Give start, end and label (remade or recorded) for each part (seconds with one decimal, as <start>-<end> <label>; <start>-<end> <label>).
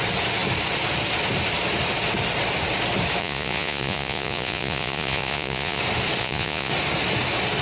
0.0-3.2 recorded; 3.2-5.8 remade; 5.8-6.2 recorded; 6.2-6.7 remade; 6.7-7.6 recorded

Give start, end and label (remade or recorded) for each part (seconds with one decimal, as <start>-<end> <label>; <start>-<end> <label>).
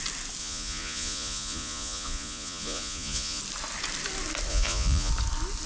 0.0-0.4 recorded; 0.4-3.4 remade; 3.4-4.5 recorded; 4.5-5.1 remade; 5.1-5.7 recorded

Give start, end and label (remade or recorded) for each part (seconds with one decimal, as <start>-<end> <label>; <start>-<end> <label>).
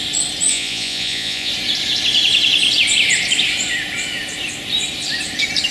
0.0-0.5 recorded; 0.5-1.5 remade; 1.5-5.7 recorded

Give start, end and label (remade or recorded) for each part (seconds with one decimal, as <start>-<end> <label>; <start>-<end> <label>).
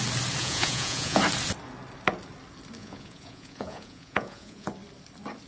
0.0-0.4 recorded; 0.4-1.2 remade; 1.2-2.8 recorded; 2.8-4.7 remade; 4.7-5.5 recorded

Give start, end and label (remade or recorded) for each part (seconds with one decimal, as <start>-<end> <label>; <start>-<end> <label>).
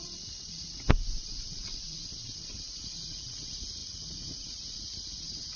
0.0-5.6 remade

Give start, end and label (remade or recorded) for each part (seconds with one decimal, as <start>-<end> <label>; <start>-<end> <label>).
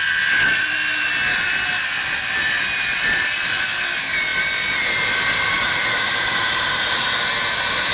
0.0-7.9 recorded